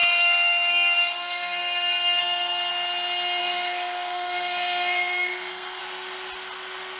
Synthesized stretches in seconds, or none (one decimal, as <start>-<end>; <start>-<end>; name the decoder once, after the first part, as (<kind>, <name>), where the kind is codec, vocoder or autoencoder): 0.0-2.7 (codec, SNAC); 3.4-5.8